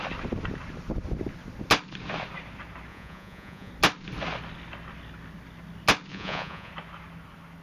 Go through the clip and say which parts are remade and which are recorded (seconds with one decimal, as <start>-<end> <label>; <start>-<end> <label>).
0.0-2.9 recorded; 2.9-3.7 remade; 3.7-6.1 recorded; 6.1-6.7 remade; 6.7-7.6 recorded